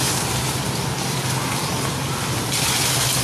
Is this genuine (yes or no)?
yes